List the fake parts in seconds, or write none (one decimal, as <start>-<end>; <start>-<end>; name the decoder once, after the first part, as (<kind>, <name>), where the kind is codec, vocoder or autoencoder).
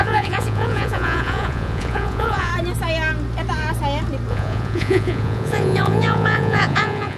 0.0-2.5 (vocoder, Vocos); 4.3-7.2